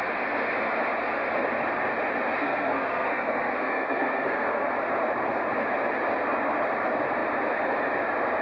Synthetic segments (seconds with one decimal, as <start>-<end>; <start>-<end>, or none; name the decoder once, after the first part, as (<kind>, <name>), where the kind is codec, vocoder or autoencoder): 2.4-4.7 (codec, SNAC)